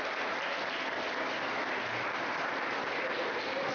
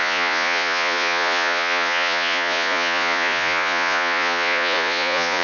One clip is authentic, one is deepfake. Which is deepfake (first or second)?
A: second